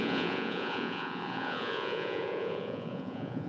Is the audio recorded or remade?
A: remade